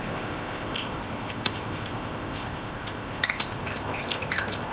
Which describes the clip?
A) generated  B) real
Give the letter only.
A